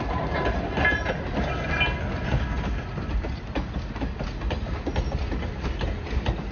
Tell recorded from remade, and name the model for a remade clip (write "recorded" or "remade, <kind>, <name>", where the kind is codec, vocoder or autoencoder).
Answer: recorded